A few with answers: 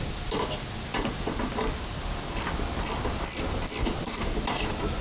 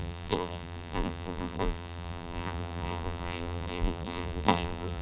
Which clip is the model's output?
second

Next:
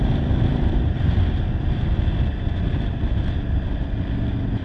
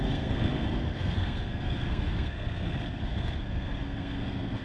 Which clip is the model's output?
second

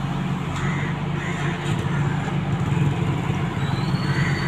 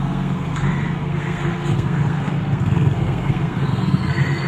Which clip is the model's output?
second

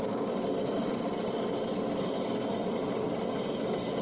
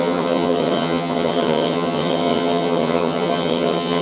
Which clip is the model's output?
second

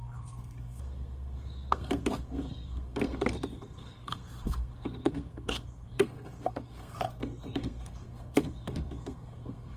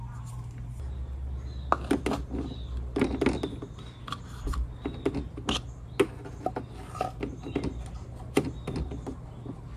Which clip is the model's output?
first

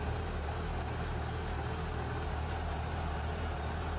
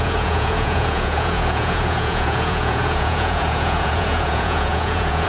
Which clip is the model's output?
second